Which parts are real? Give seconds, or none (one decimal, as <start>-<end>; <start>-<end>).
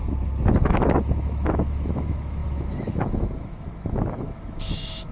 0.0-0.6